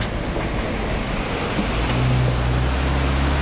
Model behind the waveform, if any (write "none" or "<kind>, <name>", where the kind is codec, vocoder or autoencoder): none